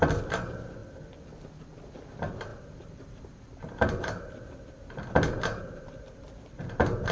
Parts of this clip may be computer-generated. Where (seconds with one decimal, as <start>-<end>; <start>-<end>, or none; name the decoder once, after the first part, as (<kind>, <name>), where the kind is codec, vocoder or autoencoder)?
none